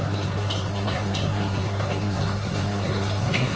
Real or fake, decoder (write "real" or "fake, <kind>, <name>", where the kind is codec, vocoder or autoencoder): fake, codec, SNAC